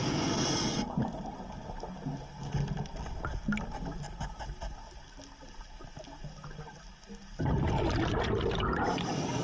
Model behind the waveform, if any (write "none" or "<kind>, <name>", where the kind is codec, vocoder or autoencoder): none